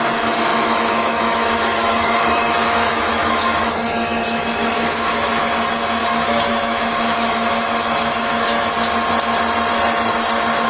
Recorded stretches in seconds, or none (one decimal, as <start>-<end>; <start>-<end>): 0.0-0.5; 5.5-6.0; 8.7-10.7